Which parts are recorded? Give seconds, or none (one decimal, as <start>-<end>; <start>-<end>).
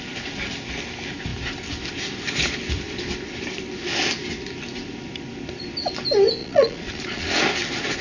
0.0-6.4; 7.4-8.0